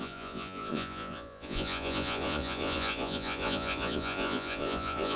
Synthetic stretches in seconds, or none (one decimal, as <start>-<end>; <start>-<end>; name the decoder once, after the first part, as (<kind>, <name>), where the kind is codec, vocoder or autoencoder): 0.0-5.2 (vocoder, Vocos)